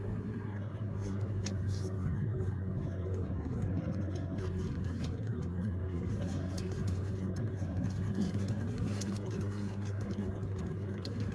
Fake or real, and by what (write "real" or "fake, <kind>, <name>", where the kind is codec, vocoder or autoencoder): fake, codec, SNAC